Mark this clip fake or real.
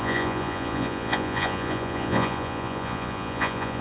fake